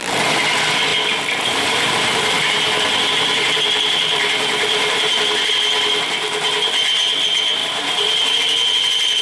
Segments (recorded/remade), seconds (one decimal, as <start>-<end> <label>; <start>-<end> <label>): 0.0-0.9 recorded; 0.9-5.5 remade; 5.5-7.6 recorded; 7.6-8.4 remade; 8.4-9.2 recorded